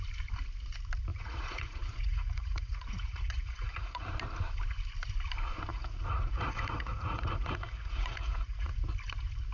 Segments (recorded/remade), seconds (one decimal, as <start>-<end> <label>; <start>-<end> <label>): 0.0-1.1 recorded; 1.1-4.1 remade; 4.1-5.7 recorded; 5.7-8.9 remade; 8.9-9.5 recorded